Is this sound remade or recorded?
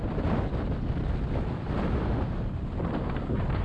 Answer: recorded